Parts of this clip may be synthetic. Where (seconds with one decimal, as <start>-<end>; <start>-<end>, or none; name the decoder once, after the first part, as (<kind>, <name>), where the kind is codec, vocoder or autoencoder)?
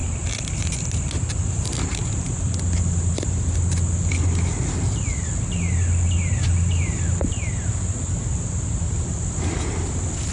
none